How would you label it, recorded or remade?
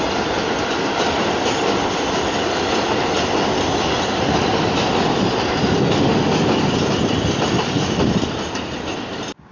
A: recorded